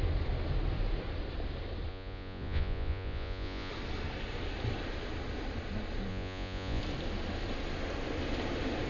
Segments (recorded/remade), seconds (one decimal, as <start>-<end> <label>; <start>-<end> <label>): 0.0-1.9 recorded; 1.9-3.7 remade; 3.7-6.1 recorded; 6.1-6.8 remade; 6.8-8.9 recorded